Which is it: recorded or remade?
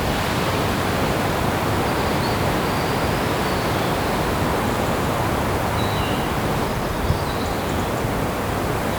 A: recorded